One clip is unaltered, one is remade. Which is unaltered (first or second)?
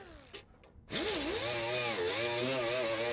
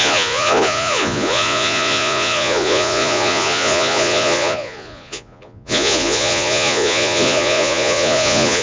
first